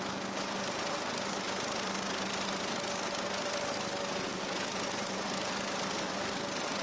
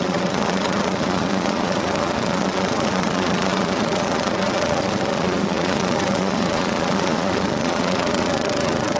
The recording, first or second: first